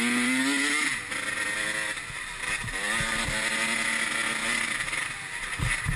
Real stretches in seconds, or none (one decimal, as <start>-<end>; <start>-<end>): 0.0-6.0